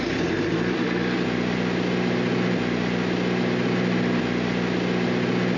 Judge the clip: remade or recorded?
recorded